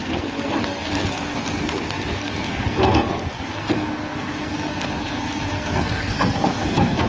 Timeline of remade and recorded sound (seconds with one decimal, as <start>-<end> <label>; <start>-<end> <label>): 0.0-7.1 remade